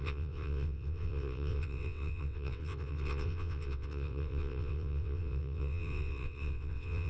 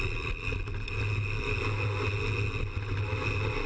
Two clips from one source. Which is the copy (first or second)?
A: first